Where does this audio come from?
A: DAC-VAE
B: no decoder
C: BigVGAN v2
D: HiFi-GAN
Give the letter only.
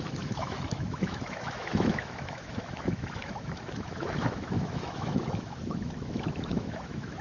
A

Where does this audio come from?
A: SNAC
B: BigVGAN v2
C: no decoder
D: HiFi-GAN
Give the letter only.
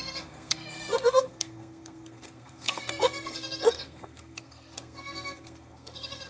A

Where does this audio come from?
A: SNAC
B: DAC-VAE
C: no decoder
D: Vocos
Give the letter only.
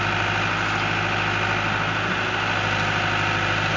C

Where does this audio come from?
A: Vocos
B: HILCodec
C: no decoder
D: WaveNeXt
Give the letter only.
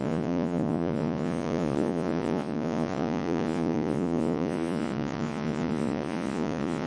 A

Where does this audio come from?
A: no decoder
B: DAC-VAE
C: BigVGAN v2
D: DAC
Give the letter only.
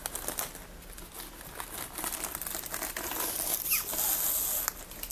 A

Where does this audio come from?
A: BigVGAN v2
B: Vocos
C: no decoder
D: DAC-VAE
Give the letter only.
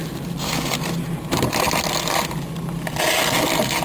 C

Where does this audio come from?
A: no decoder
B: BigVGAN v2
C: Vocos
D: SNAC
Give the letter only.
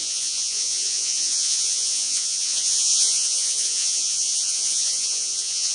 C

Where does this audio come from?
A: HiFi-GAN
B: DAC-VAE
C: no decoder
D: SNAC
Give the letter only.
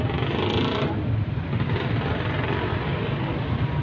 C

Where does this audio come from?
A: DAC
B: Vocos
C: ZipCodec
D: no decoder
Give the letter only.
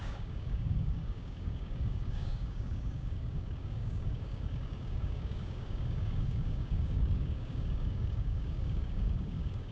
A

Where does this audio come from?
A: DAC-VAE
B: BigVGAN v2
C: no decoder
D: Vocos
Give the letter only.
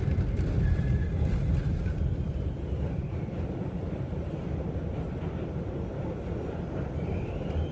B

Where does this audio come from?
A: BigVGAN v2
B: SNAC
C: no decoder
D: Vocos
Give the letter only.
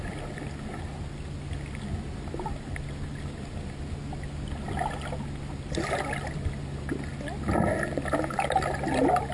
C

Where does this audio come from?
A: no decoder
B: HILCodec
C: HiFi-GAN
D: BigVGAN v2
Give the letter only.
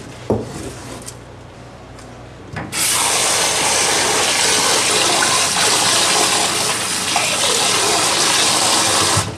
A